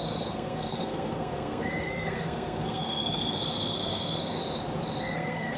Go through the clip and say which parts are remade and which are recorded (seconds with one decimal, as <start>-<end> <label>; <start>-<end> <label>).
0.0-4.4 remade; 4.4-5.0 recorded; 5.0-5.6 remade

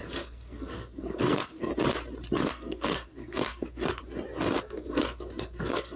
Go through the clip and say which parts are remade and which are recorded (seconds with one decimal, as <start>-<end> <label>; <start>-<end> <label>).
0.0-1.7 remade; 1.7-2.5 recorded; 2.5-4.0 remade; 4.0-4.6 recorded; 4.6-6.0 remade

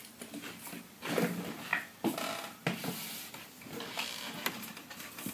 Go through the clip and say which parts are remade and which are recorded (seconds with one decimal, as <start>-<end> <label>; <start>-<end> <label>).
0.0-5.3 recorded

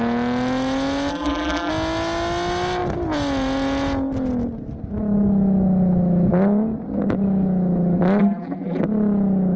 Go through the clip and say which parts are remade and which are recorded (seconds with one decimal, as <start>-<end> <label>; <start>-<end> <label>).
0.0-1.1 recorded; 1.1-1.7 remade; 1.7-8.2 recorded; 8.2-8.8 remade; 8.8-9.6 recorded

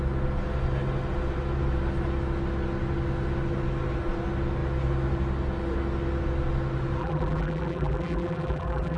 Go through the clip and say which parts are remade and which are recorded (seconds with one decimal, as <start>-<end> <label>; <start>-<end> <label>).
0.0-7.0 recorded; 7.0-9.0 remade

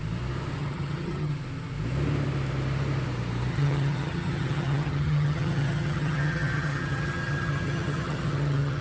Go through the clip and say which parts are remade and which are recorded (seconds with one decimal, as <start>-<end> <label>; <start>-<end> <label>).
0.0-0.6 recorded; 0.6-1.3 remade; 1.3-3.5 recorded; 3.5-8.8 remade

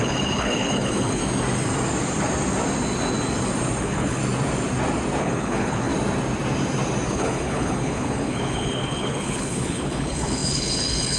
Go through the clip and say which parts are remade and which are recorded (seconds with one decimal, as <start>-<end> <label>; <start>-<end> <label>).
0.0-1.2 remade; 1.2-3.8 recorded; 3.8-4.2 remade; 4.2-5.2 recorded; 5.2-5.9 remade; 5.9-7.1 recorded; 7.1-11.2 remade